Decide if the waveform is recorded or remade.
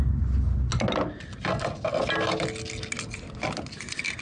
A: recorded